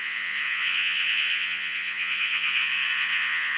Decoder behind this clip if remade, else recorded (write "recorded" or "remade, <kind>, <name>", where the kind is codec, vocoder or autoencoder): remade, vocoder, Vocos